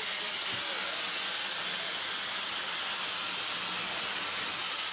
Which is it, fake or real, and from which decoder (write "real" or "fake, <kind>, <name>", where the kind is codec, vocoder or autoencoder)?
real